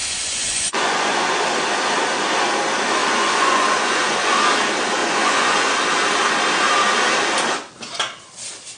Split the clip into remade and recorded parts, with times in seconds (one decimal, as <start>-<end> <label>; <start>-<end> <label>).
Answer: 0.0-1.3 remade; 1.3-3.0 recorded; 3.0-4.5 remade; 4.5-5.0 recorded; 5.0-5.7 remade; 5.7-8.8 recorded